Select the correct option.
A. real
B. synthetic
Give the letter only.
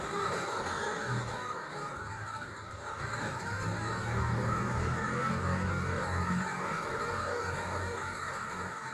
B